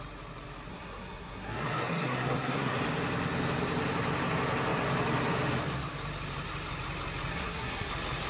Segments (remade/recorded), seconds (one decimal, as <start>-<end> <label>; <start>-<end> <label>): 0.0-0.7 recorded; 0.7-2.8 remade; 2.8-7.3 recorded; 7.3-7.9 remade; 7.9-8.3 recorded

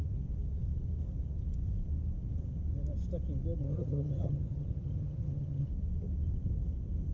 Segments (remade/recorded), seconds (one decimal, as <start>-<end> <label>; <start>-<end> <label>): 0.0-3.6 recorded; 3.6-5.7 remade; 5.7-7.1 recorded

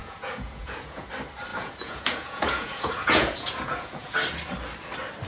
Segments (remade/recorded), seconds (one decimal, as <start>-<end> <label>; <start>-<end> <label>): 0.0-1.1 remade; 1.1-1.5 recorded; 1.5-4.1 remade; 4.1-5.3 recorded

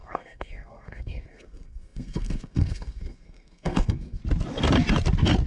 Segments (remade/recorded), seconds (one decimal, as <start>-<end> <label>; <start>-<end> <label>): 0.0-4.2 remade; 4.2-5.5 recorded

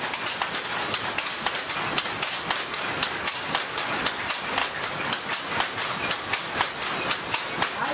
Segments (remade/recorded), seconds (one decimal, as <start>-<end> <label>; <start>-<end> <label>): 0.0-4.6 recorded; 4.6-5.3 remade; 5.3-7.9 recorded

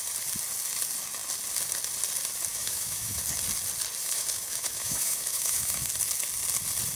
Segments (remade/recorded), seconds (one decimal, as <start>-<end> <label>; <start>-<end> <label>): 0.0-2.5 recorded; 2.5-3.2 remade; 3.2-4.0 recorded; 4.0-5.9 remade; 5.9-6.9 recorded

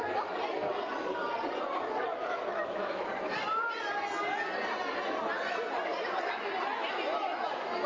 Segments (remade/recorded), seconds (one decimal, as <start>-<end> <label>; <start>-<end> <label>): 0.0-2.1 recorded; 2.1-3.1 remade; 3.1-7.9 recorded